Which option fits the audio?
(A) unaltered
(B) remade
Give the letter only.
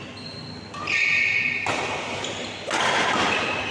A